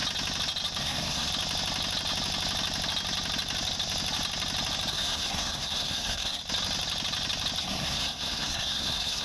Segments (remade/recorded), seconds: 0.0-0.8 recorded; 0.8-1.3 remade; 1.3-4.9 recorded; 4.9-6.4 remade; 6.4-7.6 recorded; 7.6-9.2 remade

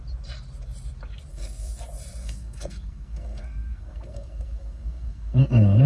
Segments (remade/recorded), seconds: 0.0-1.3 recorded; 1.3-1.8 remade; 1.8-2.2 recorded; 2.2-5.9 remade

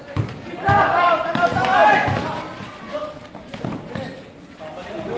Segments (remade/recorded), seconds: 0.0-5.2 recorded